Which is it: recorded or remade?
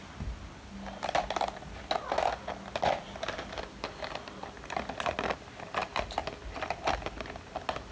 recorded